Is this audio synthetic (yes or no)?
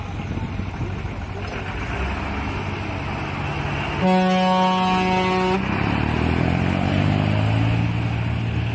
no